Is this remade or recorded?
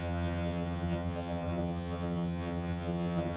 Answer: remade